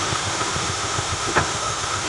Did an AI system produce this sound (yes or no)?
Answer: yes